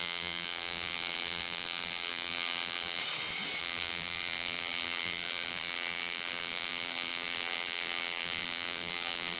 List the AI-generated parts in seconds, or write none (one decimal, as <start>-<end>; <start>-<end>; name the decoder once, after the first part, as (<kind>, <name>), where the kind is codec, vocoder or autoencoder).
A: 0.0-3.0 (vocoder, BigVGAN v2); 3.6-9.4